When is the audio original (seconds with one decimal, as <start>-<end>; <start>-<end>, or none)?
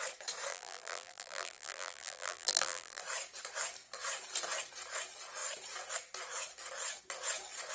0.0-0.5; 3.0-7.7